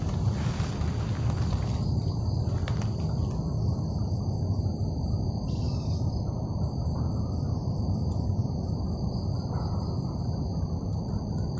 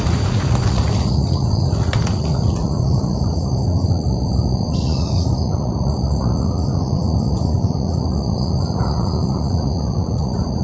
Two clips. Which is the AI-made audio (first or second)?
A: second